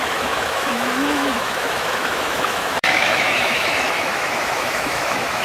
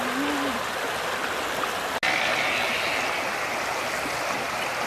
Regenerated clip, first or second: first